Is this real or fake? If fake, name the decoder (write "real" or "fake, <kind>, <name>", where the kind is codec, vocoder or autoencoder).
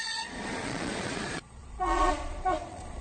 fake, vocoder, Vocos